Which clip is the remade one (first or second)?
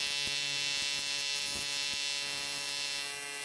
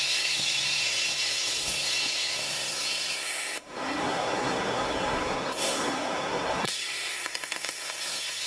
second